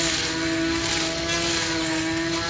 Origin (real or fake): real